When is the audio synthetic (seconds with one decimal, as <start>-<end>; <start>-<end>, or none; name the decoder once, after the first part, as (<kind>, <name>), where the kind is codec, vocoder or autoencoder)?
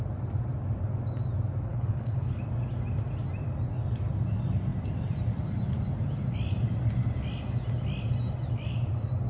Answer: 1.7-2.4 (codec, HILCodec)